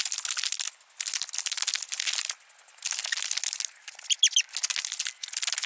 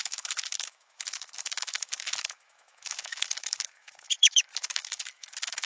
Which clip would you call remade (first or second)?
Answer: second